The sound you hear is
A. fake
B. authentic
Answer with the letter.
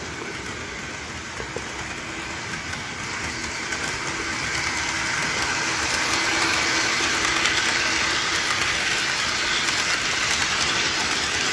B